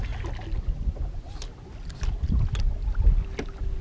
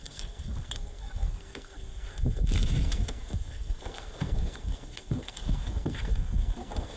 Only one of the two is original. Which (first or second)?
first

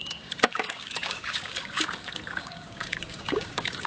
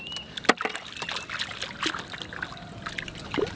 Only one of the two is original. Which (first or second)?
second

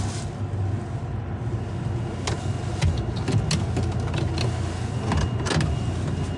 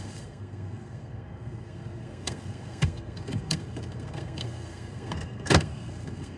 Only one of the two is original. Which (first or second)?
first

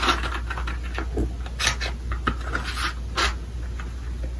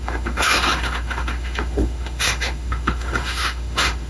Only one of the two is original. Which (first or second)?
first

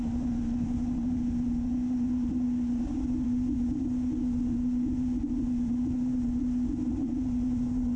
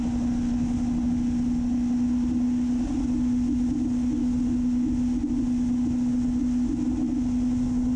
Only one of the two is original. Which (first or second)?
second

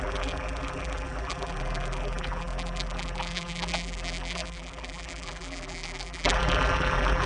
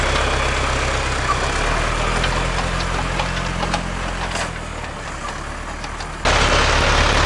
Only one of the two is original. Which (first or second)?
second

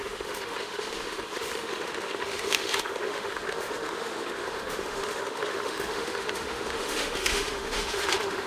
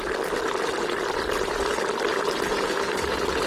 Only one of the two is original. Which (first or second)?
second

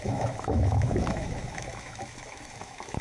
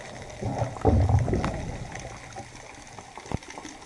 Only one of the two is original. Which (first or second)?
second